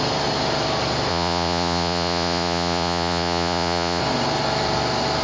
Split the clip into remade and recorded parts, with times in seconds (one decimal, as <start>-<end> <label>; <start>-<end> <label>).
0.0-1.1 recorded; 1.1-4.0 remade; 4.0-5.2 recorded